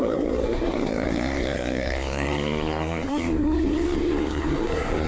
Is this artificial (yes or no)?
yes